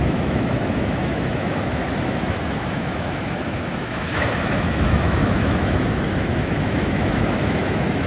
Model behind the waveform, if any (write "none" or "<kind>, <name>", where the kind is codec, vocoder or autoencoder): autoencoder, DAC-VAE